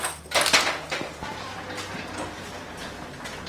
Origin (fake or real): real